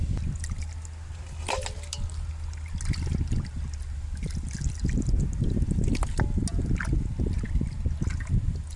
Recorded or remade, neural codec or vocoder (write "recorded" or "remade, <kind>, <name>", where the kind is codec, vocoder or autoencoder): recorded